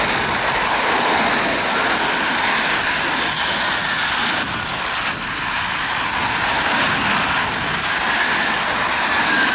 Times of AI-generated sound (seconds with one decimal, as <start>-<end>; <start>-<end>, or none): none